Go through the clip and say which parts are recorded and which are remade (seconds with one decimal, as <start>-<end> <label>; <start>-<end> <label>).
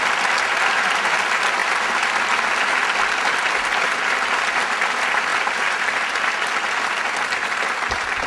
0.0-8.3 recorded